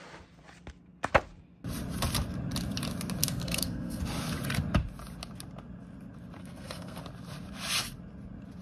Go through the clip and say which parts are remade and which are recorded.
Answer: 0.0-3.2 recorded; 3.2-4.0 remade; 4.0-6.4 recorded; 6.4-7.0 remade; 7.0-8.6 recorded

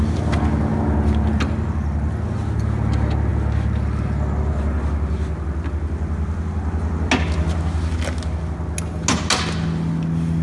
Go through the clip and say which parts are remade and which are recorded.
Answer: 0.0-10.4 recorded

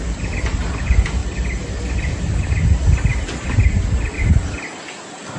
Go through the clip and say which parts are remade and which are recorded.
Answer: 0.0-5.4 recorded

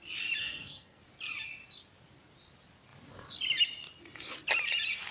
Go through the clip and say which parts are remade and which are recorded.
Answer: 0.0-0.4 recorded; 0.4-1.0 remade; 1.0-5.1 recorded

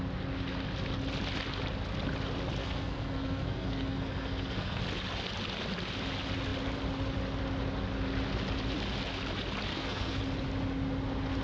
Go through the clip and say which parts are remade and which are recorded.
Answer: 0.0-2.6 recorded; 2.6-4.8 remade; 4.8-9.7 recorded; 9.7-10.2 remade; 10.2-11.4 recorded